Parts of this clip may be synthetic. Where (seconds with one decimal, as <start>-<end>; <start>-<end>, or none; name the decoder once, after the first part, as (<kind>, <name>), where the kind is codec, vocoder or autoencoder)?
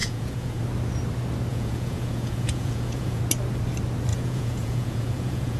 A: 0.0-0.6 (vocoder, Vocos); 1.5-3.2; 4.1-5.6